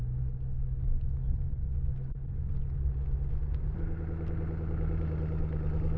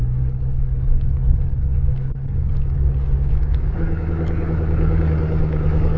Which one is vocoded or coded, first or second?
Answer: second